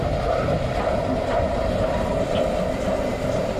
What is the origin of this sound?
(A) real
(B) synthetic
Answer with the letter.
A